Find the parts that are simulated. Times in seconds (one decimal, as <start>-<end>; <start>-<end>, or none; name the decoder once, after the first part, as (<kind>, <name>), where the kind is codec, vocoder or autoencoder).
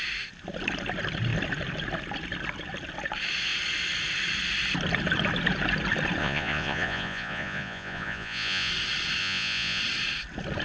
6.2-8.7 (vocoder, Vocos); 9.2-9.8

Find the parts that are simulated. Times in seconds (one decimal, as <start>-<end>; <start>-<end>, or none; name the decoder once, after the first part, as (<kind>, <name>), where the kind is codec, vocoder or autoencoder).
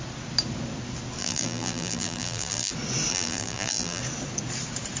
1.2-2.7 (vocoder, BigVGAN v2); 3.1-4.0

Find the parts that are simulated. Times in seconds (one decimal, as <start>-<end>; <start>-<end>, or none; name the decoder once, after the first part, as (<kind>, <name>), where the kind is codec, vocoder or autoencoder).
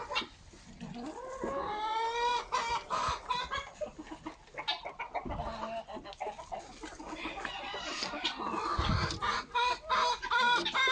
none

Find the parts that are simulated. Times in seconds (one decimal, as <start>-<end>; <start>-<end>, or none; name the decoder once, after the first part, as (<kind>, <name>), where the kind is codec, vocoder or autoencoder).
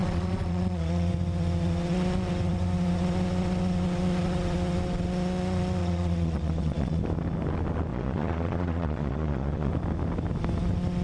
0.0-1.1 (vocoder, Vocos); 5.8-7.0; 7.9-9.7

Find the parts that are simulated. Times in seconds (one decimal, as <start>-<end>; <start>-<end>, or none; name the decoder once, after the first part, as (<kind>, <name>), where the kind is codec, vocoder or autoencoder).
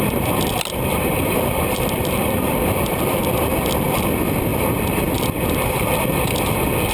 0.9-3.2 (vocoder, BigVGAN v2)